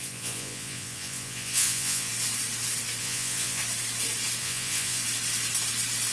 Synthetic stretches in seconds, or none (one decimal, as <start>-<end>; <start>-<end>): 0.0-2.1; 3.0-3.6; 4.4-5.0